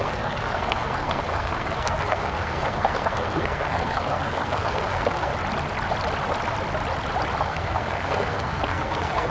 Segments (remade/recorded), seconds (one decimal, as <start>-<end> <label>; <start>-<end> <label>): 0.0-5.3 remade; 5.3-7.4 recorded; 7.4-9.3 remade